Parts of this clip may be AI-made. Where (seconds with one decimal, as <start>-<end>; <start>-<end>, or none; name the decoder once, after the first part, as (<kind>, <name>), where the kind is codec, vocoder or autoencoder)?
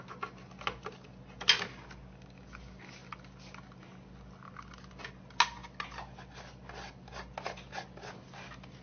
none